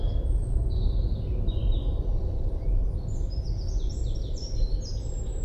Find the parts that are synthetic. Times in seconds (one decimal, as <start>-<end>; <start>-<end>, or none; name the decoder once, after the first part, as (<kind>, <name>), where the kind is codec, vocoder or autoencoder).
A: 1.6-4.8 (vocoder, BigVGAN v2)